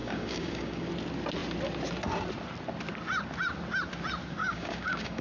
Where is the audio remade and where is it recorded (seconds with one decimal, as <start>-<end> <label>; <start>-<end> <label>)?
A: 0.0-0.9 remade; 0.9-4.4 recorded; 4.4-5.2 remade